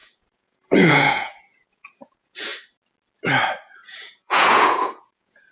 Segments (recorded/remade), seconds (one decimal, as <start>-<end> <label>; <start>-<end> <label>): 0.0-2.5 remade; 2.5-3.7 recorded; 3.7-5.5 remade